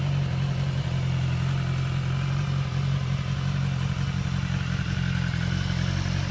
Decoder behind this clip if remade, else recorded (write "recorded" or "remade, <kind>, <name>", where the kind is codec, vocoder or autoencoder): recorded